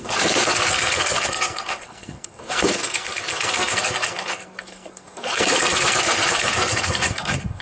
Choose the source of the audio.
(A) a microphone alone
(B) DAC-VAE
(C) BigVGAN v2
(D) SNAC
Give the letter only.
D